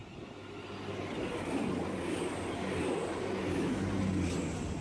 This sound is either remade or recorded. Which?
recorded